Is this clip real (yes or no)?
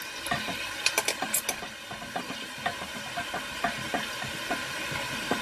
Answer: yes